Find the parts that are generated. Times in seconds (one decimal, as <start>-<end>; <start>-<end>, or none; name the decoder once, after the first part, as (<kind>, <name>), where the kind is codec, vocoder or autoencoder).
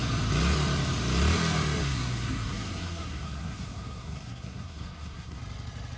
1.8-5.4 (codec, SNAC)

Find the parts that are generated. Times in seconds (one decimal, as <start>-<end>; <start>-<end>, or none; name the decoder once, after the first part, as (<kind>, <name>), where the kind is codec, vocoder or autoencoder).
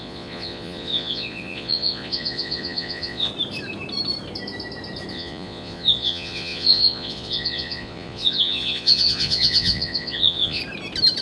0.0-3.3 (vocoder, Vocos); 5.1-10.6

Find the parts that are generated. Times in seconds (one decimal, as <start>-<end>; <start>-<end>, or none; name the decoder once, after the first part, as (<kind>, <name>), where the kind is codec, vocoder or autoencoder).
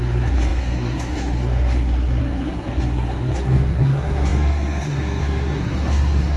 0.0-6.4 (codec, SNAC)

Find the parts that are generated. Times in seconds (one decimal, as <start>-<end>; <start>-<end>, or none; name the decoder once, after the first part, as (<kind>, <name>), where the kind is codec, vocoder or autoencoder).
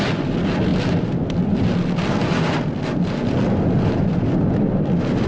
none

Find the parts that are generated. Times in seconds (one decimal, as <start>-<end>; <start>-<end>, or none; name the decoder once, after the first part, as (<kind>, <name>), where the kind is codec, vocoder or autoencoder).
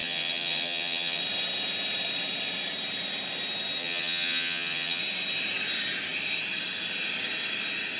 0.0-1.2 (vocoder, HiFi-GAN); 3.8-5.0